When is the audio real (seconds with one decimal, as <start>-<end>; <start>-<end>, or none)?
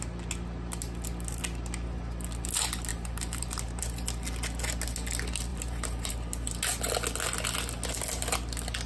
0.0-2.9; 3.8-5.5; 6.1-8.9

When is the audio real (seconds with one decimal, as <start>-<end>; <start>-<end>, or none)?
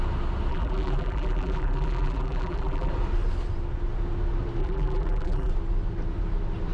0.0-0.5; 2.9-4.6; 5.5-6.7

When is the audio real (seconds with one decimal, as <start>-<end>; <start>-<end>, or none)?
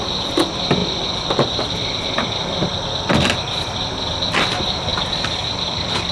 0.8-1.5; 2.7-3.4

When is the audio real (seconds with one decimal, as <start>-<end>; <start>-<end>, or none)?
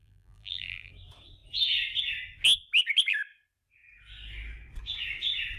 0.9-5.6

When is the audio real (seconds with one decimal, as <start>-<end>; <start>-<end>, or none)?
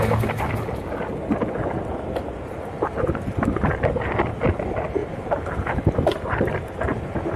0.0-7.4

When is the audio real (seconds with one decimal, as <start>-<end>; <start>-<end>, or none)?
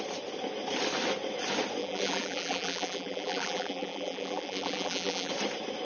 0.0-1.8; 5.3-5.8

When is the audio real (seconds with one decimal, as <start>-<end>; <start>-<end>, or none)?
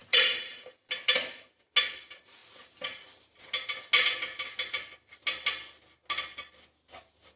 0.7-2.4; 3.5-7.4